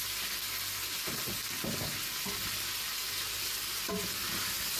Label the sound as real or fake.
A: real